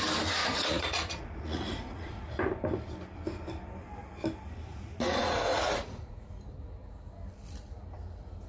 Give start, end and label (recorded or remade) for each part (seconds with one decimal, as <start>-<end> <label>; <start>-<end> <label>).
0.0-0.4 recorded; 0.4-2.4 remade; 2.4-4.7 recorded; 4.7-6.3 remade; 6.3-8.5 recorded